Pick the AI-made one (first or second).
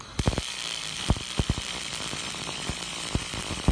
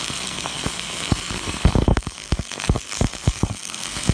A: second